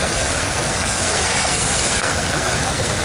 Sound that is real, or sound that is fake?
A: fake